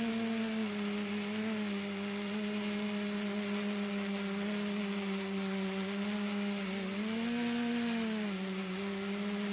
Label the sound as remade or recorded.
recorded